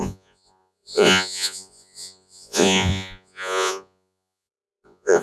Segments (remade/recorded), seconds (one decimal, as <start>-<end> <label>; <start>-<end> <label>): 0.0-5.2 remade